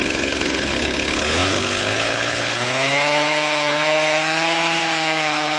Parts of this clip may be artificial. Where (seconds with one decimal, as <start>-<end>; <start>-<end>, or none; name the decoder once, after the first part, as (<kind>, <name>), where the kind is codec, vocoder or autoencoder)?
0.0-5.6 (codec, HILCodec)